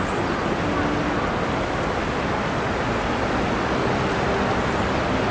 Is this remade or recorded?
recorded